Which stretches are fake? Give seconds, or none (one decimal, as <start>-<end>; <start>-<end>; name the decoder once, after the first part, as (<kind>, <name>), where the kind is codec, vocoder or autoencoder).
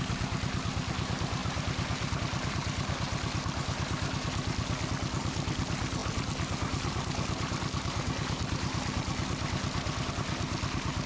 none